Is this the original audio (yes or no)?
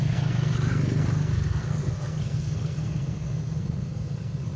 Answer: no